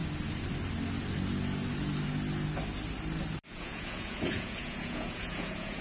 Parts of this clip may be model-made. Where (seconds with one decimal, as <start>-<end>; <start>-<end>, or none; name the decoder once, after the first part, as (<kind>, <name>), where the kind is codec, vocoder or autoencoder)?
3.5-5.8 (vocoder, Vocos)